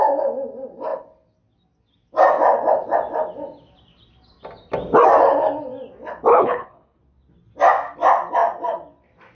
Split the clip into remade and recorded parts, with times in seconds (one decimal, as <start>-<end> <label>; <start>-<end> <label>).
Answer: 0.0-6.3 recorded; 6.3-7.0 remade; 7.0-9.3 recorded